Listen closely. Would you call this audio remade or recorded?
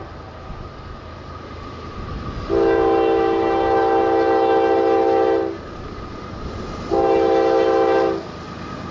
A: recorded